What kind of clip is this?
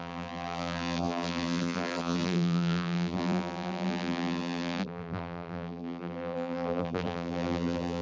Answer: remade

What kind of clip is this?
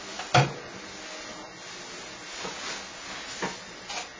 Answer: recorded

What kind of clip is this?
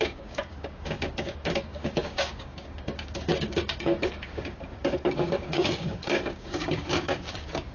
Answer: remade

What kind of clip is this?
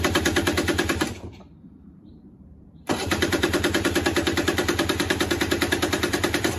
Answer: remade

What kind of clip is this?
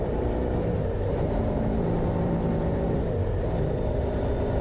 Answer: remade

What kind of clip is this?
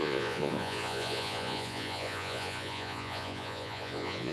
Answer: remade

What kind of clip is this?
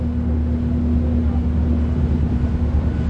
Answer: recorded